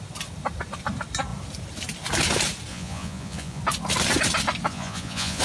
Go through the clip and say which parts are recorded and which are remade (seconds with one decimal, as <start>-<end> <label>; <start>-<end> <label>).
0.0-2.7 recorded; 2.7-3.6 remade; 3.6-4.7 recorded; 4.7-5.4 remade